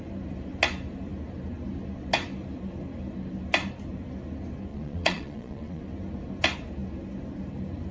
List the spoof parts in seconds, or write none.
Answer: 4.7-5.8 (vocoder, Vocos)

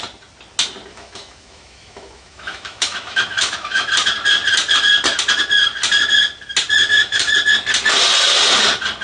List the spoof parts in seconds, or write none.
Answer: 0.9-3.9 (autoencoder, DAC-VAE); 6.8-7.3

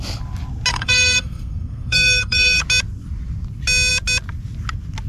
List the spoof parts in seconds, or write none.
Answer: 0.7-2.6 (codec, SNAC)

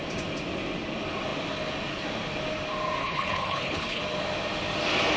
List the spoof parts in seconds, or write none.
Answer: 3.0-4.0 (codec, HILCodec)

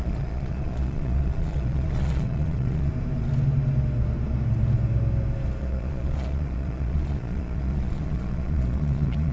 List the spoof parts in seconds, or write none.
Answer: 0.0-2.9 (vocoder, Vocos); 5.6-9.3